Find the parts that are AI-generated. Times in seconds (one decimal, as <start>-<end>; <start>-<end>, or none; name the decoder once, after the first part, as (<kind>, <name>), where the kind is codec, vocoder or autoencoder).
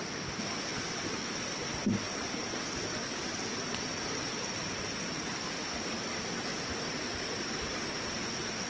0.7-1.5 (vocoder, BigVGAN v2); 4.3-6.8